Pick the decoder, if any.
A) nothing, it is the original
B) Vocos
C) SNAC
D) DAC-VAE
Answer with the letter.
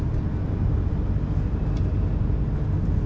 A